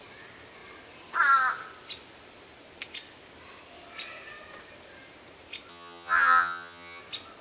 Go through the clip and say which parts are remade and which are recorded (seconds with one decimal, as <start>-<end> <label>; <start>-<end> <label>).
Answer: 0.0-5.7 recorded; 5.7-7.0 remade; 7.0-7.4 recorded